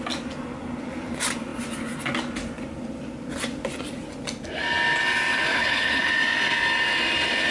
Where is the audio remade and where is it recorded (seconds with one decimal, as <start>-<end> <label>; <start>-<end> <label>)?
0.0-5.5 recorded; 5.5-6.1 remade; 6.1-7.5 recorded